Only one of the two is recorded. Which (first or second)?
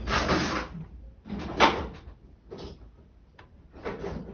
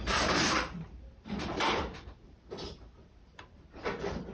first